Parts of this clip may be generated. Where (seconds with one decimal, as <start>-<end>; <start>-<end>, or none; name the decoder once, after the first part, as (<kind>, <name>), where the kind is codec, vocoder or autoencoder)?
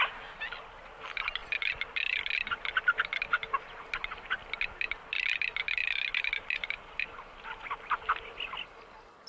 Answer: none